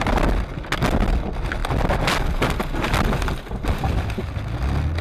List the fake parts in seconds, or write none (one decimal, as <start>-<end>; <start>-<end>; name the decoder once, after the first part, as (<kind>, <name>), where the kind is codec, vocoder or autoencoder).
none